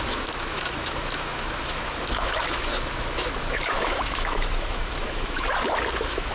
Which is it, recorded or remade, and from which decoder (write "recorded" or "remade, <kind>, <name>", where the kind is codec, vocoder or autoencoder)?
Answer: remade, autoencoder, DAC-VAE